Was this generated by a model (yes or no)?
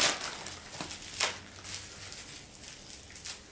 no